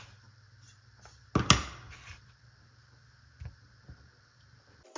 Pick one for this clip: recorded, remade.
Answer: recorded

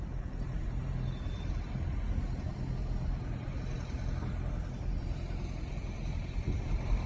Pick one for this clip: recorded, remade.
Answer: recorded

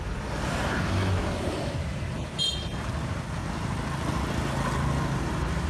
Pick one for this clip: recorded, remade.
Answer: recorded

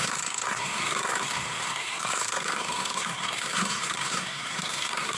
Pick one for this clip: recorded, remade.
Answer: remade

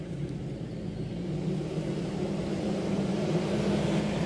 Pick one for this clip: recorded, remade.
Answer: remade